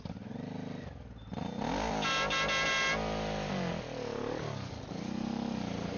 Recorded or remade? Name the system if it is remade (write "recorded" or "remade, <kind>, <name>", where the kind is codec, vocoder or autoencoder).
recorded